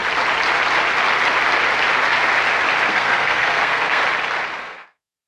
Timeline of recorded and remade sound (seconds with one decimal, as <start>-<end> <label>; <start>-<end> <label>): 0.0-2.9 recorded; 2.9-4.0 remade; 4.0-4.6 recorded; 4.6-5.3 remade